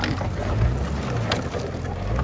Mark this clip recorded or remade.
recorded